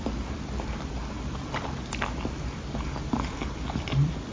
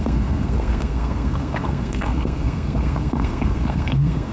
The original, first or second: first